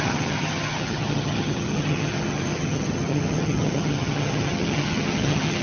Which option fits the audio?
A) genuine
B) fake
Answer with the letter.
B